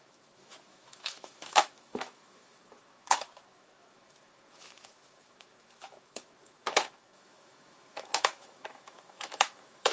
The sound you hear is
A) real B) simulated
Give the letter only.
B